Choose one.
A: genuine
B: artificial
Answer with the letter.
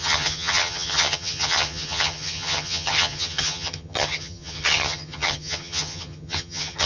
B